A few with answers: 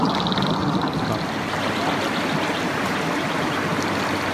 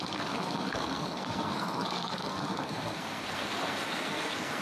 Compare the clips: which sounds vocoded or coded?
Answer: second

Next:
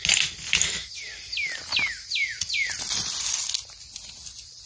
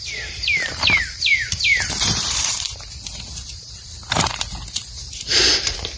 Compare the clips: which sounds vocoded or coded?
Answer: second